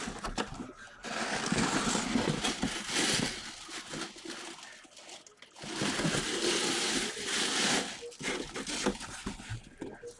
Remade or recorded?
recorded